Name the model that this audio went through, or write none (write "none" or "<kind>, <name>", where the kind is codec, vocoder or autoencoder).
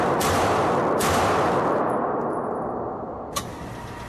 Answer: none